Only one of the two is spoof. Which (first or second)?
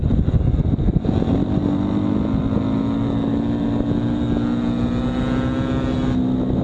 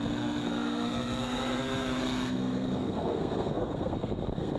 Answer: second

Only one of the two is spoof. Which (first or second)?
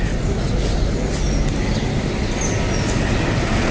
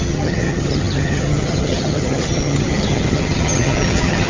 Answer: second